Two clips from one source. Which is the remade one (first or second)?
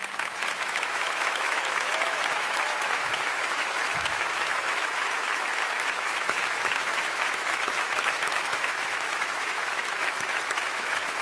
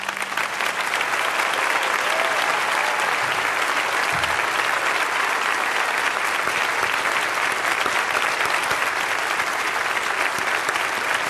first